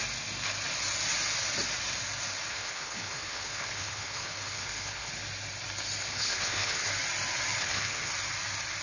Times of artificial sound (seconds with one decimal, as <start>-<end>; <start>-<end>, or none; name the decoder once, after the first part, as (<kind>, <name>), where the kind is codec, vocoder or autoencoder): 2.5-5.1 (codec, HILCodec); 6.0-6.9; 7.6-8.1